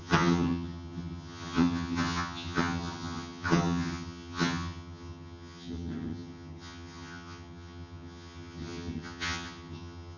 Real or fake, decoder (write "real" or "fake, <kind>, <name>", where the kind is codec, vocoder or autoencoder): fake, vocoder, HiFi-GAN